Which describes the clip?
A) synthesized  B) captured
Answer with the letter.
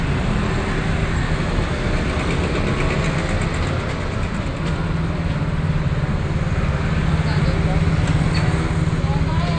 B